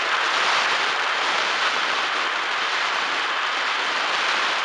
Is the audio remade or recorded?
recorded